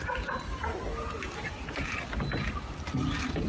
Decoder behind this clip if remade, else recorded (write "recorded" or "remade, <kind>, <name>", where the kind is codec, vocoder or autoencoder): recorded